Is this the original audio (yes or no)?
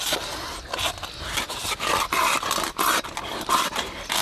yes